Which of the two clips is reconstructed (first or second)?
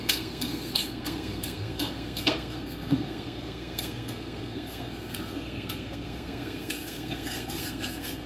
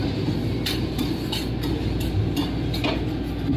first